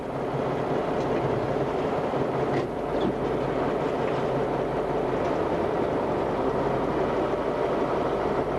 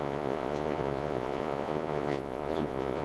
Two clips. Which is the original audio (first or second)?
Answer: first